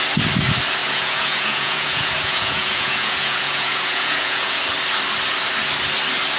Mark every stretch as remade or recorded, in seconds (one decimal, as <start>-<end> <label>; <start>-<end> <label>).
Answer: 0.0-0.8 recorded; 0.8-4.6 remade; 4.6-6.4 recorded